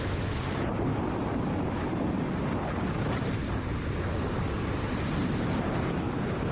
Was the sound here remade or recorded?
recorded